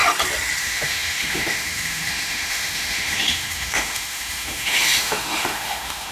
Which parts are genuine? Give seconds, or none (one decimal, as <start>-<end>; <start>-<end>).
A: 0.0-0.6